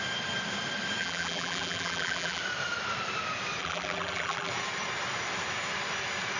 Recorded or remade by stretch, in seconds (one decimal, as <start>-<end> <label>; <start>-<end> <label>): 0.0-1.0 recorded; 1.0-2.4 remade; 2.4-3.6 recorded; 3.6-4.5 remade; 4.5-6.4 recorded